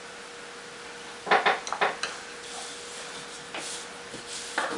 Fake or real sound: real